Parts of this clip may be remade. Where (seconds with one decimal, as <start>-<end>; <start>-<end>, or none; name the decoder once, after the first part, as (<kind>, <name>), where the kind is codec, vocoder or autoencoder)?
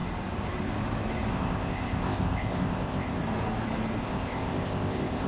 1.3-3.2 (codec, ZipCodec); 4.0-5.3